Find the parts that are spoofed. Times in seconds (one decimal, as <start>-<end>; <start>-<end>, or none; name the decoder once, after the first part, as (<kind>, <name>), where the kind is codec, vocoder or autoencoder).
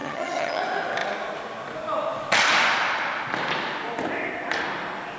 0.0-0.6 (vocoder, HiFi-GAN)